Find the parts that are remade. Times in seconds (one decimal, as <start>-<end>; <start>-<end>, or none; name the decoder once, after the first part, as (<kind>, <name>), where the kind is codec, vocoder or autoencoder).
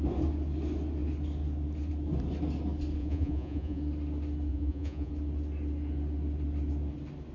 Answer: 3.0-3.8 (vocoder, Vocos); 4.5-5.1